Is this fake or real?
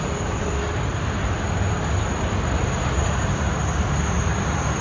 real